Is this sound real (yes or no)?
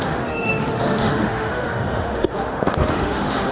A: no